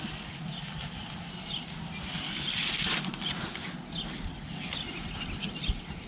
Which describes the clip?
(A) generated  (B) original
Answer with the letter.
B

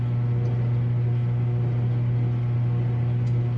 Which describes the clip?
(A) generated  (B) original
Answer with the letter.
B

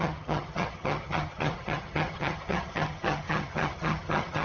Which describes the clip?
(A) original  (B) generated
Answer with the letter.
B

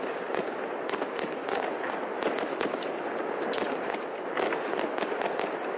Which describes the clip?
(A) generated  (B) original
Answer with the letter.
B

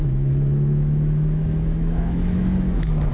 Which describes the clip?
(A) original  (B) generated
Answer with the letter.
B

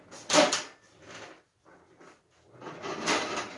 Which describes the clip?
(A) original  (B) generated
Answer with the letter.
A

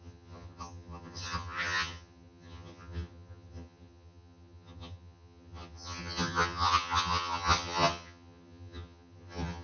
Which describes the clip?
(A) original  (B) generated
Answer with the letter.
B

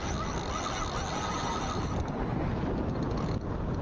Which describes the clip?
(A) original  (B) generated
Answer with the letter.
A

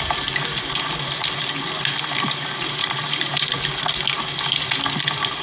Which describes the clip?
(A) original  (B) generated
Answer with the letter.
A